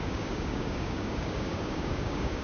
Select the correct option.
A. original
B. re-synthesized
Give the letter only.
B